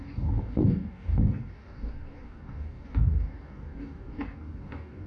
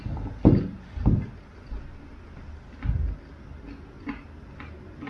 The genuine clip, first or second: second